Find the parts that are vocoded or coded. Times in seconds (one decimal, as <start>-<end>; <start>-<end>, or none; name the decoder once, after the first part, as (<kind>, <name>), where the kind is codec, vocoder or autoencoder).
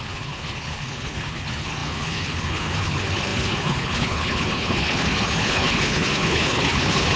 0.0-7.2 (codec, HILCodec)